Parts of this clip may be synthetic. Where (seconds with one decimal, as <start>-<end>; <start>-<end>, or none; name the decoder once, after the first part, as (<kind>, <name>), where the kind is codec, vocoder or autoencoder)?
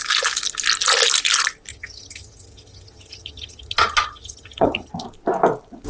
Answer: 1.7-4.9 (vocoder, HiFi-GAN)